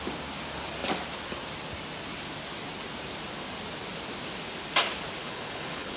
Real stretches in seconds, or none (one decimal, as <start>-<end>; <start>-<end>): 0.0-5.2